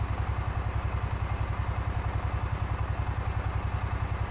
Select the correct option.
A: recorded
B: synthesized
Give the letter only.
A